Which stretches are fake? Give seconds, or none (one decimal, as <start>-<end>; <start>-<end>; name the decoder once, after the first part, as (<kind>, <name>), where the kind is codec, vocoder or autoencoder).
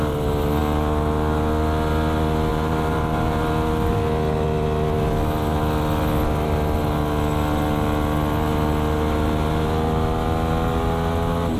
2.5-3.5 (vocoder, BigVGAN v2)